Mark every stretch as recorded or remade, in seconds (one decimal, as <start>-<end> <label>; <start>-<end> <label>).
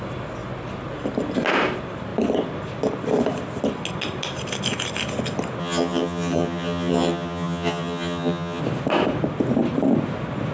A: 0.0-5.6 recorded; 5.6-8.6 remade; 8.6-10.5 recorded